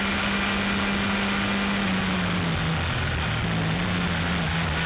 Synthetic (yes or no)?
no